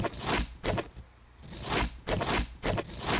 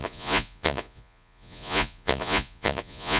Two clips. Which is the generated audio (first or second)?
second